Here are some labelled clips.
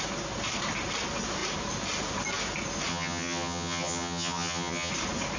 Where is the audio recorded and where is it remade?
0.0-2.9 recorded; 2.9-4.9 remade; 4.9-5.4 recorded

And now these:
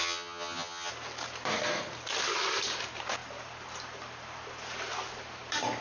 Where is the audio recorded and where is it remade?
0.0-0.9 remade; 0.9-5.8 recorded

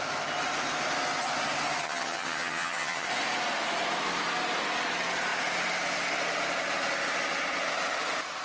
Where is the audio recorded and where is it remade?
0.0-1.8 recorded; 1.8-3.1 remade; 3.1-8.4 recorded

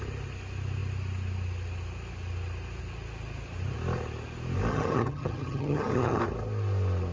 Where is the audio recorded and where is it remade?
0.0-4.7 recorded; 4.7-6.2 remade; 6.2-7.1 recorded